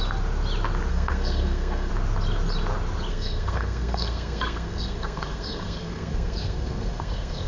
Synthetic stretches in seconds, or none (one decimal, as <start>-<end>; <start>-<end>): 0.9-1.9; 3.1-7.5